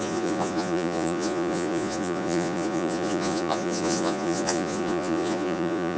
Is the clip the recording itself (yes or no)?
no